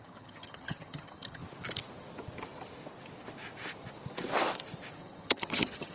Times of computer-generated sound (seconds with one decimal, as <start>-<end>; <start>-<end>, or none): 0.0-1.4; 4.9-5.9